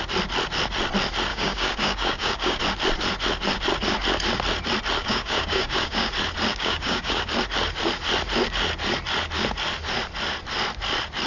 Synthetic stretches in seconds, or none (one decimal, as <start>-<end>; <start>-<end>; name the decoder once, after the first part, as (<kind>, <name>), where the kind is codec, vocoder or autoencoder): 1.3-2.6 (codec, DAC); 5.0-6.1; 6.5-7.3